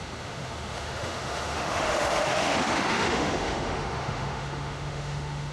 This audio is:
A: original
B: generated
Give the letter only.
B